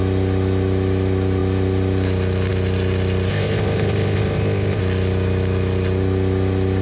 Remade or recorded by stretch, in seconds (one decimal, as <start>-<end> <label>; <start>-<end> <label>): 0.0-3.3 recorded; 3.3-4.8 remade; 4.8-6.8 recorded